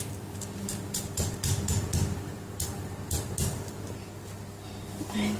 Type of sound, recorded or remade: recorded